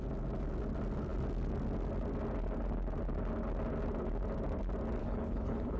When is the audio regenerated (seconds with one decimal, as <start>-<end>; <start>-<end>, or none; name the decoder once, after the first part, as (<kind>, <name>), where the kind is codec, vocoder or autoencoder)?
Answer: 5.0-5.8 (codec, HILCodec)